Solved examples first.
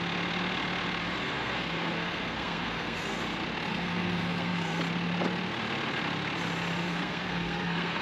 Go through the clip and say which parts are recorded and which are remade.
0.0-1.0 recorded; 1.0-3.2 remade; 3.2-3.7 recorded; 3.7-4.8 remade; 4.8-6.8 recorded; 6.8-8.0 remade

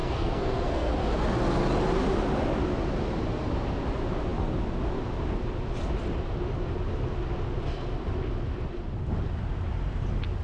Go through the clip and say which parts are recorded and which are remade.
0.0-0.9 remade; 0.9-10.4 recorded

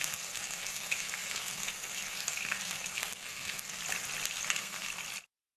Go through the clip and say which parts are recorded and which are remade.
0.0-3.8 remade; 3.8-4.5 recorded; 4.5-4.9 remade; 4.9-5.6 recorded

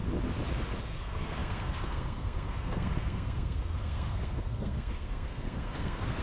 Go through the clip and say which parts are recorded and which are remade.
0.0-0.8 recorded; 0.8-6.2 remade